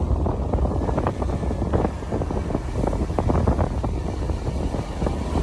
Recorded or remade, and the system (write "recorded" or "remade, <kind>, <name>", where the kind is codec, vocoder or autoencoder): recorded